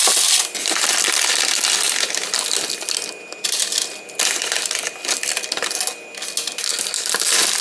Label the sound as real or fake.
real